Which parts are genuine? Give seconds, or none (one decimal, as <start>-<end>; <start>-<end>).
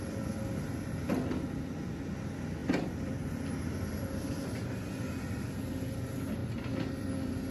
0.0-2.6; 5.5-6.4; 7.1-7.5